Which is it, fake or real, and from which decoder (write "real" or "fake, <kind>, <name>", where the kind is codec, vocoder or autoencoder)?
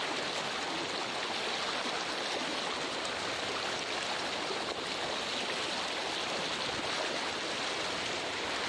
real